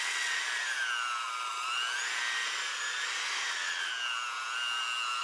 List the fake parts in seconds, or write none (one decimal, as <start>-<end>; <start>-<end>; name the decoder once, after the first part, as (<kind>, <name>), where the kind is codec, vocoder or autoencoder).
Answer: 0.0-0.4 (vocoder, WaveNeXt); 3.5-3.9

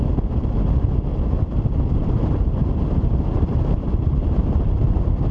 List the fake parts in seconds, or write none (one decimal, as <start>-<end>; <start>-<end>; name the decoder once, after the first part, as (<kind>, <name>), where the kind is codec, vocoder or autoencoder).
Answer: 1.1-4.3 (vocoder, BigVGAN v2)

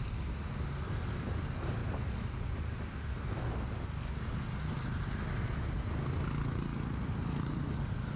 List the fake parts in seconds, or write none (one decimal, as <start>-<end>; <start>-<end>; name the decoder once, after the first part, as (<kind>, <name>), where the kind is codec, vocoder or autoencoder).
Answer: none

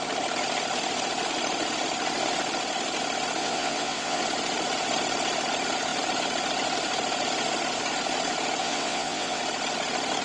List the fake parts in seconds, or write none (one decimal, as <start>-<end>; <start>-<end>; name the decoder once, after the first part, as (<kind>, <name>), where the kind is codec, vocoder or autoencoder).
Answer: 3.4-4.2 (vocoder, WaveNeXt); 8.6-9.4

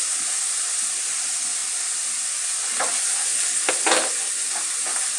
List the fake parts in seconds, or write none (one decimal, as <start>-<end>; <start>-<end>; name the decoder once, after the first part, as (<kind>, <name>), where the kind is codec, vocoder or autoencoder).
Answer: none

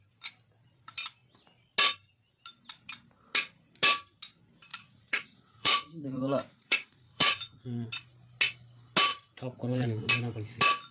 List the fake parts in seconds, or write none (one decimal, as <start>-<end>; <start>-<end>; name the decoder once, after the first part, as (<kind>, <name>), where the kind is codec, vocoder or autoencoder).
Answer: 4.7-7.9 (vocoder, Vocos); 9.1-10.1

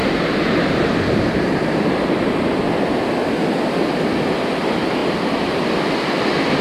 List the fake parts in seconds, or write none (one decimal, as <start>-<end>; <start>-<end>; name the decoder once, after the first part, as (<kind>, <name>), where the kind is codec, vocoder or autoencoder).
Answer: 0.0-2.6 (vocoder, BigVGAN v2)